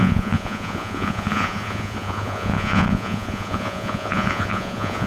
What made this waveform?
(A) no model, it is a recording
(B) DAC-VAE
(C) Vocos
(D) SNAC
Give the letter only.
C